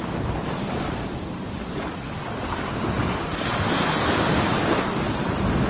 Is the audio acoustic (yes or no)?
yes